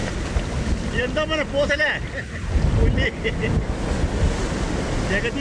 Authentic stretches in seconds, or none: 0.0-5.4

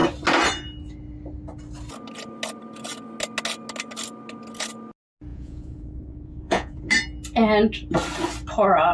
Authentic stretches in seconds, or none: 0.0-5.3; 6.8-8.9

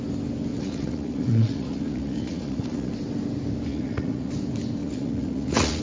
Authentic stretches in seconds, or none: 0.0-0.5; 2.9-3.7; 4.3-4.8

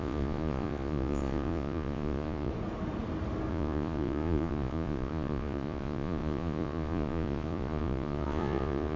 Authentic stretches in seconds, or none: 2.5-3.5

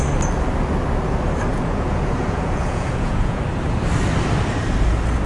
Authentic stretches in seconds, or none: 0.0-1.5; 3.4-5.3

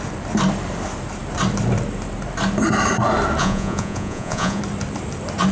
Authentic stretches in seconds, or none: 0.0-3.4; 4.6-5.5